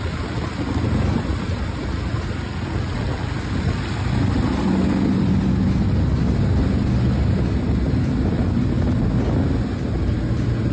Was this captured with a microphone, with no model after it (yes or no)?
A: yes